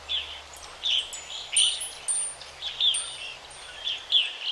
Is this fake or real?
real